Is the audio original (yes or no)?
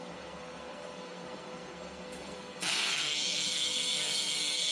no